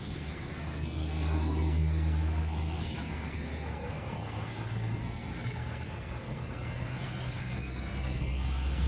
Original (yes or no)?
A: no